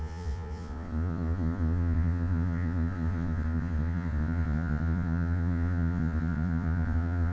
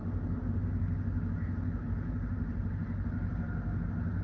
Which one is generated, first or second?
first